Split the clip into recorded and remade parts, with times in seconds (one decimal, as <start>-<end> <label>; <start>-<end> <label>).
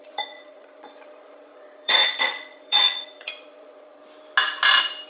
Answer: 0.0-4.0 remade; 4.0-5.1 recorded